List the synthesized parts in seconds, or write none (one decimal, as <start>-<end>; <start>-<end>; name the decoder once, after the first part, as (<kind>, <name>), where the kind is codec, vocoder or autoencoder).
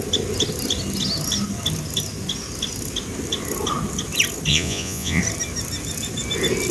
4.5-5.2 (vocoder, Vocos)